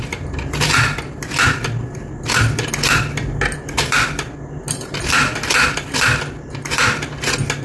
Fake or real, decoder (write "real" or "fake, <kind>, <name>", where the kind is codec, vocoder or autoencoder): real